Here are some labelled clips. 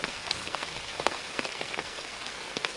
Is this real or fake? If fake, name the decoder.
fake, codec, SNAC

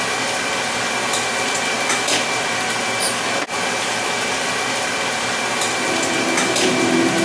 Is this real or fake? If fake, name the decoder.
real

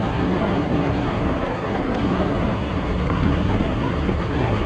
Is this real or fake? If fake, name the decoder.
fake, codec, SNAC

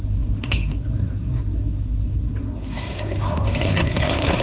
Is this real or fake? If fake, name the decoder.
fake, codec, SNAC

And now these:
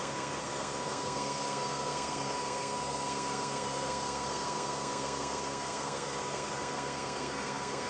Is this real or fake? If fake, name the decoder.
fake, codec, SNAC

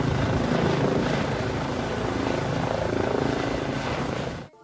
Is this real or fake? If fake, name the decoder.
real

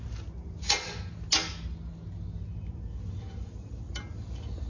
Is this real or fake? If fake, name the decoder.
real